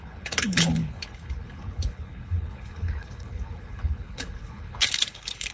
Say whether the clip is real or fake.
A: fake